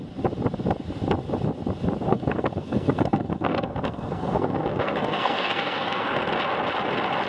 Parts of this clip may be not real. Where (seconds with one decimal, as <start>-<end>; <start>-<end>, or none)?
2.1-6.3